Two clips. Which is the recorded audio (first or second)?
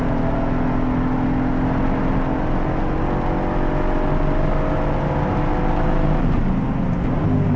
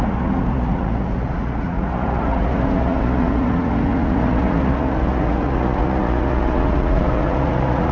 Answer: first